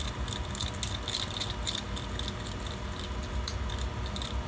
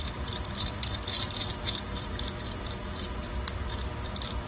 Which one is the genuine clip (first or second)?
first